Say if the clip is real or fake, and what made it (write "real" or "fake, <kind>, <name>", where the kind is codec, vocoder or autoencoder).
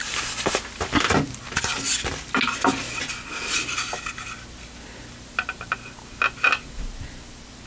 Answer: real